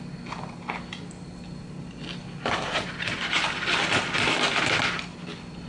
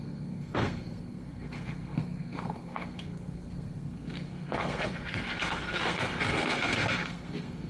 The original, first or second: first